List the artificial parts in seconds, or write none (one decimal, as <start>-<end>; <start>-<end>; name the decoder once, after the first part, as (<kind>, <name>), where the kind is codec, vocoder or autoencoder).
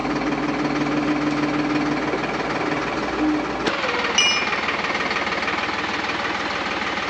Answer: none